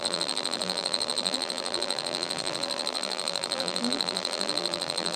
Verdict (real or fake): fake